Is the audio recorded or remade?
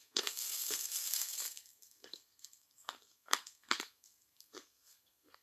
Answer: remade